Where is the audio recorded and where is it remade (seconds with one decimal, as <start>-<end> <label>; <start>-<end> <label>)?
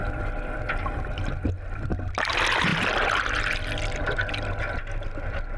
0.0-1.2 remade; 1.2-2.7 recorded; 2.7-3.2 remade; 3.2-5.6 recorded